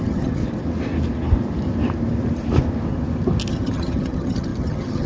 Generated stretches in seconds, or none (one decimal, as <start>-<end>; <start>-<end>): 0.0-0.4; 3.5-5.1